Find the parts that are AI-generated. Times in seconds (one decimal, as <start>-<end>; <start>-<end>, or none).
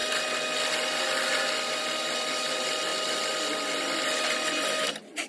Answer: none